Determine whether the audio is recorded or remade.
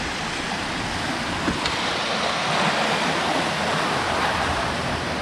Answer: recorded